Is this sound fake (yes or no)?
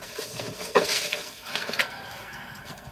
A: yes